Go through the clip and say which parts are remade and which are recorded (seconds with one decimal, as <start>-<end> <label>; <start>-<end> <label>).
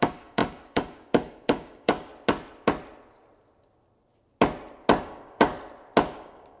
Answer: 0.0-2.1 remade; 2.1-5.0 recorded; 5.0-5.5 remade; 5.5-6.1 recorded; 6.1-6.6 remade